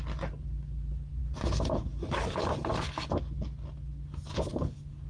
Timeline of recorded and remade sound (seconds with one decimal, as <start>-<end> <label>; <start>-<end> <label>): 0.0-5.1 recorded